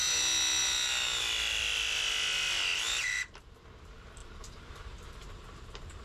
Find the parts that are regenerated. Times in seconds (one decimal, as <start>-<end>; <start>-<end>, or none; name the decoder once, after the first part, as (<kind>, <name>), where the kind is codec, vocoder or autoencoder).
4.2-5.6 (vocoder, BigVGAN v2)